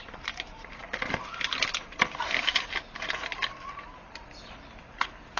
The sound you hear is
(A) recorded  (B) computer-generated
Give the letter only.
A